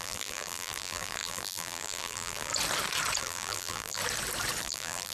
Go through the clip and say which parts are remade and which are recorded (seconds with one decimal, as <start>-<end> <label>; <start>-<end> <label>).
0.0-2.5 remade; 2.5-3.2 recorded; 3.2-4.0 remade; 4.0-4.6 recorded; 4.6-5.1 remade